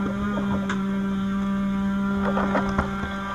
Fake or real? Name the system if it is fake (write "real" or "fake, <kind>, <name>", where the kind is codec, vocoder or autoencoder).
real